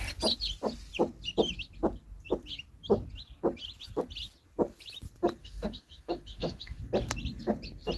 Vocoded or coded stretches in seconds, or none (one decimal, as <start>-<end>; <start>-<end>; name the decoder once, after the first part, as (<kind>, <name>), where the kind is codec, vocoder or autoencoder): 5.4-6.8 (autoencoder, DAC-VAE)